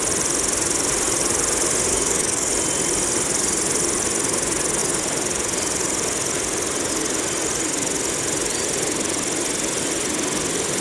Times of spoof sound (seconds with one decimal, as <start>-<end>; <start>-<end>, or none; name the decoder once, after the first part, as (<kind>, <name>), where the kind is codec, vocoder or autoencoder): 1.9-2.5 (codec, DAC)